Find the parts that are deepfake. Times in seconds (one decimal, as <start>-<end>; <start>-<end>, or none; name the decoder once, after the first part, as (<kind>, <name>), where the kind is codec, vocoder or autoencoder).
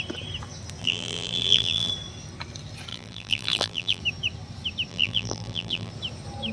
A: 0.8-1.9 (vocoder, BigVGAN v2); 2.9-4.0; 4.9-5.9